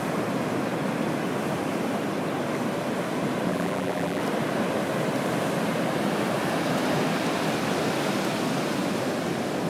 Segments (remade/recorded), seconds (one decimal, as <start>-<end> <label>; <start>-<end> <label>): 0.0-3.5 recorded; 3.5-4.2 remade; 4.2-9.7 recorded